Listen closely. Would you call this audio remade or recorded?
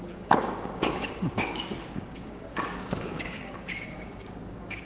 remade